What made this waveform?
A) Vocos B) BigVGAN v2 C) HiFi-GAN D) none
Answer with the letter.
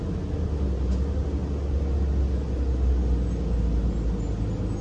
D